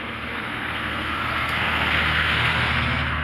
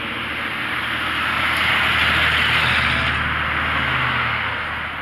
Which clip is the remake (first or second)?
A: first